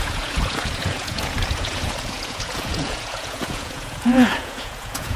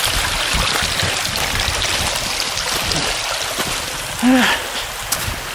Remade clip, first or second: first